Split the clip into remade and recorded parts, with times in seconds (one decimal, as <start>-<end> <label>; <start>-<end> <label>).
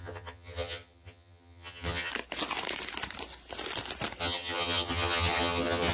0.0-2.1 remade; 2.1-4.2 recorded; 4.2-5.9 remade